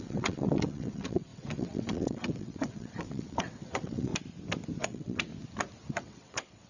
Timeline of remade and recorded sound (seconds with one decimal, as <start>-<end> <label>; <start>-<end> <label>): 0.0-4.1 remade; 4.1-4.8 recorded; 4.8-5.3 remade; 5.3-5.9 recorded; 5.9-6.7 remade